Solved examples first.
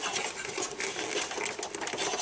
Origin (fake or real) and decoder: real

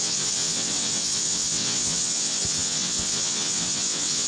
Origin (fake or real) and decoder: fake, vocoder, WaveNeXt